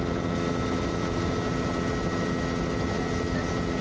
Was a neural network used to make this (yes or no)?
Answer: no